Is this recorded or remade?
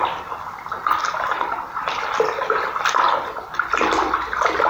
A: recorded